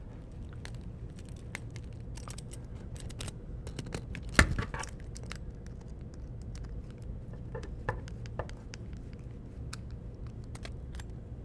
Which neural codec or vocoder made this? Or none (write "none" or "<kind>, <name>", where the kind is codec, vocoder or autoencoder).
none